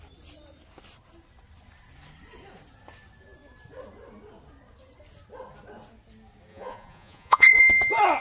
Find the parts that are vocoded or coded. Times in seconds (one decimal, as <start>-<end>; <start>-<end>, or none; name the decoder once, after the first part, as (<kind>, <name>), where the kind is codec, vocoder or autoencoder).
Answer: 6.5-7.6 (vocoder, Vocos)